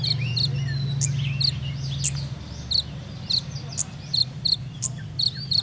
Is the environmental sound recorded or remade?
recorded